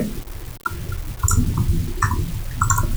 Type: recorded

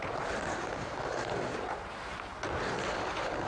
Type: recorded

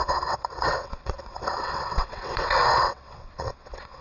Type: remade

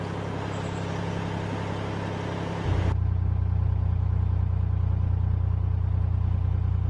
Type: recorded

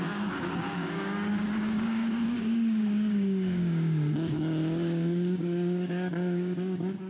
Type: remade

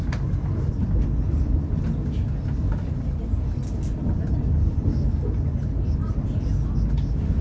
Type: recorded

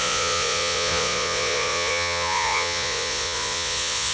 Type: remade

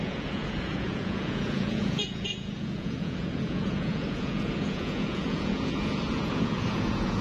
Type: remade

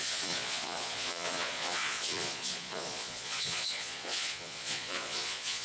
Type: remade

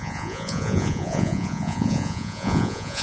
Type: remade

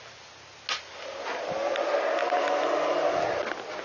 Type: recorded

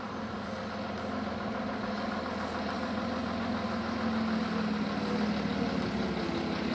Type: recorded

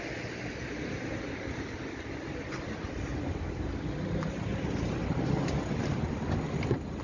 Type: recorded